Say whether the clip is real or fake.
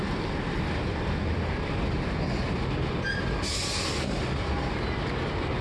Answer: real